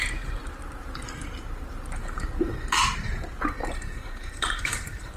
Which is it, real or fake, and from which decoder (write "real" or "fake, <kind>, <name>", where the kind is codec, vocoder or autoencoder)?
fake, vocoder, BigVGAN v2